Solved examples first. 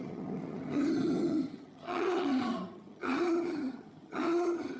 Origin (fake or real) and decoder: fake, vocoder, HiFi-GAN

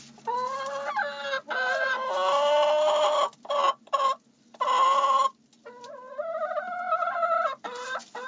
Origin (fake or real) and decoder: real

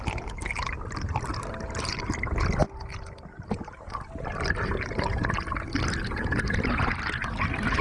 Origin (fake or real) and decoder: real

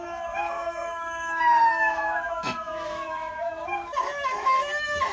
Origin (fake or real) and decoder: fake, autoencoder, DAC-VAE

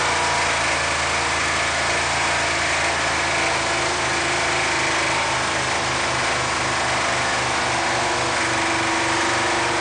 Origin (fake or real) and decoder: real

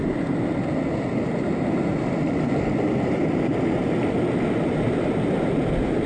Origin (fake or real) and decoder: real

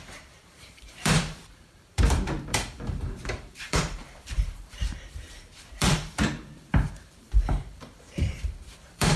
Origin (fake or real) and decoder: fake, vocoder, BigVGAN v2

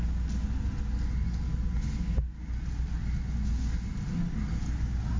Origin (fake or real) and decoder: real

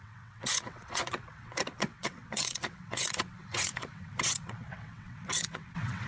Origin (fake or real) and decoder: fake, vocoder, WaveNeXt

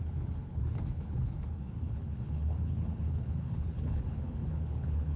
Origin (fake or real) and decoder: fake, codec, HILCodec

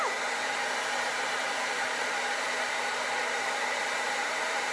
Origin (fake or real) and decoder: fake, vocoder, BigVGAN v2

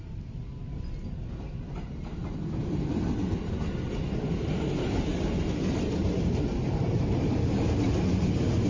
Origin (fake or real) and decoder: real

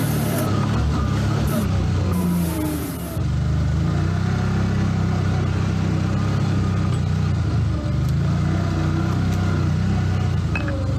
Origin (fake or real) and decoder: real